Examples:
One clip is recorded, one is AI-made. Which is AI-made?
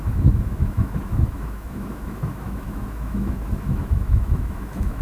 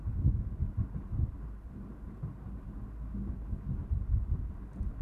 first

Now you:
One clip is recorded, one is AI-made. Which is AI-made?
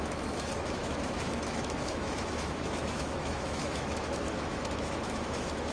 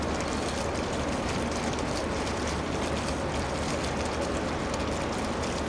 first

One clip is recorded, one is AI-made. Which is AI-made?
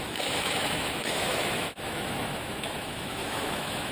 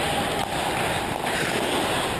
first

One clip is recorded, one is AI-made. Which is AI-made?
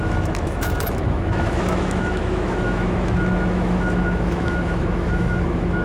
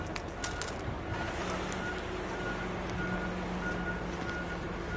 first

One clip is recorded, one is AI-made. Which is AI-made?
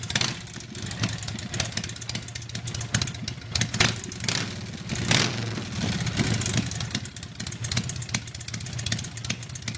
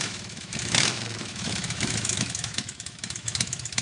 second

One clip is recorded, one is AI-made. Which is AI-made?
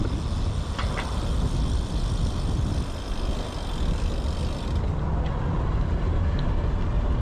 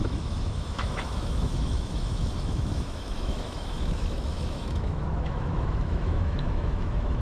second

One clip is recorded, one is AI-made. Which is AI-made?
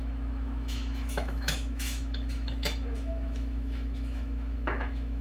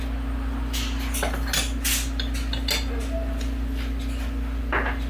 first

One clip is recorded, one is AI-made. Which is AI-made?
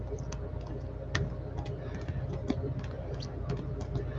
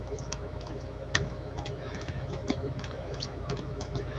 second